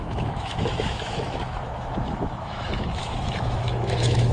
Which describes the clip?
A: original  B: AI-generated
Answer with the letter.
B